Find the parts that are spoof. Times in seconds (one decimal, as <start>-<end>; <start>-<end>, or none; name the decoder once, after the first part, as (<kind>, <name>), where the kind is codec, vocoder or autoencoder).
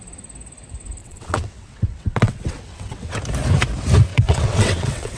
1.0-3.2 (vocoder, WaveNeXt); 4.1-5.2